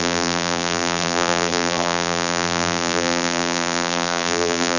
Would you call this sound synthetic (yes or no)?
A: yes